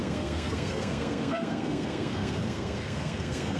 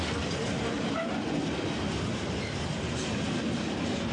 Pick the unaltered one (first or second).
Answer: second